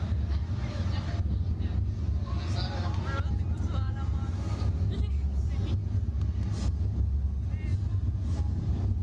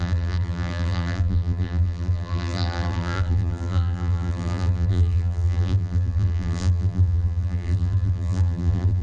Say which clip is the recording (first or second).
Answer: first